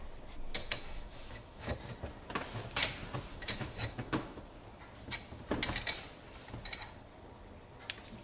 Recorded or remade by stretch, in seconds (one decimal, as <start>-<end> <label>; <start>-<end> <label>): 0.0-0.6 recorded; 0.6-1.7 remade; 1.7-3.3 recorded; 3.3-4.4 remade; 4.4-8.2 recorded